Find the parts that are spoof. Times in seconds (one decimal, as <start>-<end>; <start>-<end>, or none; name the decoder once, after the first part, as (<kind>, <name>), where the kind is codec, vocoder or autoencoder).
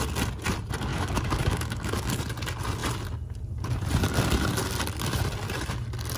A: 0.9-2.2 (codec, DAC)